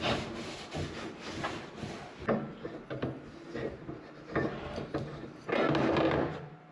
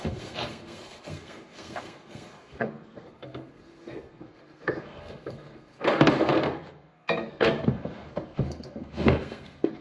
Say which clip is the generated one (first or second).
second